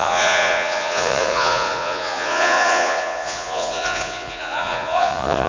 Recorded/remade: remade